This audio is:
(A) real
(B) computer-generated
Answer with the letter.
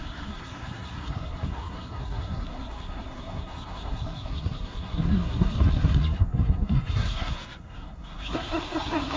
B